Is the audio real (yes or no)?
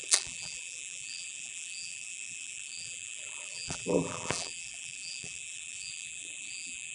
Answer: no